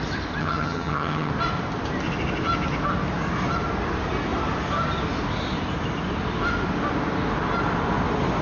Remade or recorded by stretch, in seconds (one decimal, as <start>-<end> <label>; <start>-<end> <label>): 0.0-0.4 recorded; 0.4-1.3 remade; 1.3-8.4 recorded